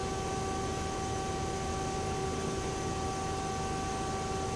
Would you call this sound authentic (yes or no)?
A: yes